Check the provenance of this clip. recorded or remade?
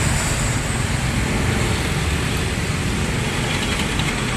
recorded